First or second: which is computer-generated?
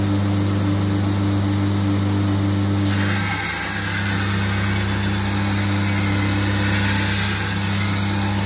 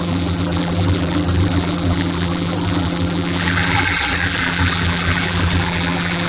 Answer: second